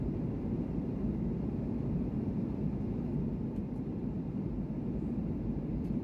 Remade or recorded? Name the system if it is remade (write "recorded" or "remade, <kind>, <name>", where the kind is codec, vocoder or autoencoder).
remade, vocoder, BigVGAN v2